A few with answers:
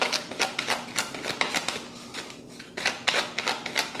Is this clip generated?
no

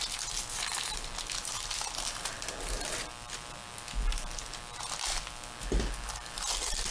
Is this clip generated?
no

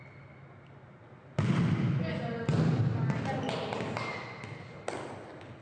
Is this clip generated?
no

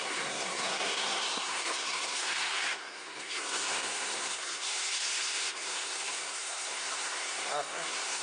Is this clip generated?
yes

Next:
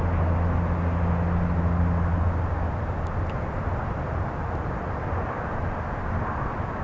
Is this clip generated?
no